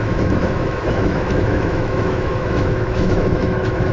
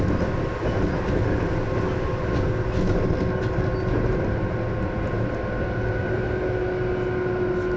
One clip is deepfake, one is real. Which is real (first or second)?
second